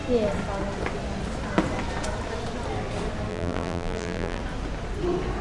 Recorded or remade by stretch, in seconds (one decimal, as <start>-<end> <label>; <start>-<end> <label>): 0.0-3.3 recorded; 3.3-4.4 remade; 4.4-5.4 recorded